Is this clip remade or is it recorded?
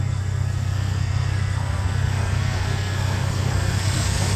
remade